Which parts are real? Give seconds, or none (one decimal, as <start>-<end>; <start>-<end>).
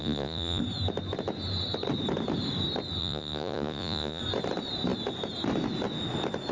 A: 0.6-3.0; 4.2-6.5